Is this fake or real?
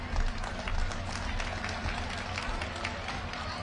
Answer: real